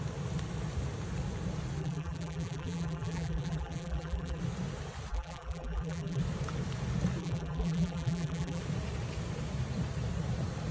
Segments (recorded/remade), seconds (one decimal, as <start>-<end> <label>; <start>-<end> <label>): 0.0-1.8 recorded; 1.8-4.4 remade; 4.4-5.1 recorded; 5.1-6.2 remade; 6.2-7.2 recorded; 7.2-8.6 remade; 8.6-10.7 recorded